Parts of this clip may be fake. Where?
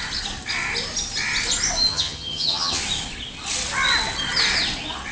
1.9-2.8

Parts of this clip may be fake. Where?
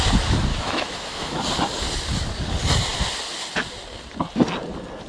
0.5-1.4